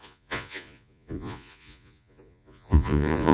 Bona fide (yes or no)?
no